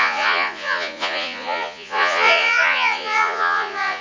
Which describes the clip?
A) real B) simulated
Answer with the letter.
B